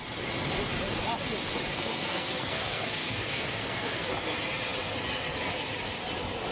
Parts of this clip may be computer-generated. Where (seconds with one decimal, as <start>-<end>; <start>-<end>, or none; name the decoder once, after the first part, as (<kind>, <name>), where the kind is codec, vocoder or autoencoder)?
1.7-4.1 (codec, SNAC)